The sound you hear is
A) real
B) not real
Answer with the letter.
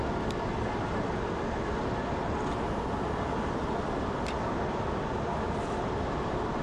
A